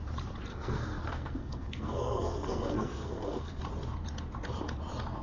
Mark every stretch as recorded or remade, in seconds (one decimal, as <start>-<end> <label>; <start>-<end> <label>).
0.0-0.5 recorded; 0.5-3.6 remade; 3.6-5.2 recorded